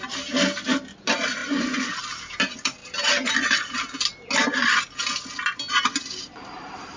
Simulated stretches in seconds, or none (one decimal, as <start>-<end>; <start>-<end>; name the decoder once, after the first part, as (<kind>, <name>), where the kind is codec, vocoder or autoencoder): 1.4-2.0 (vocoder, Vocos)